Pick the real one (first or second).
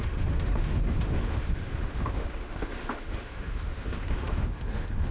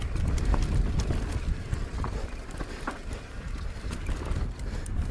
second